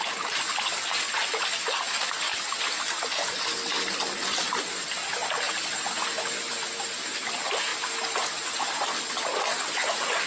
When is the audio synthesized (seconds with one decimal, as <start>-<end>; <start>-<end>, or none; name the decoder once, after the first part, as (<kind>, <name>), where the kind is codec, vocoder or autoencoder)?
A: none